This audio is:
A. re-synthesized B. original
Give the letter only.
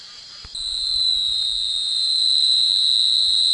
A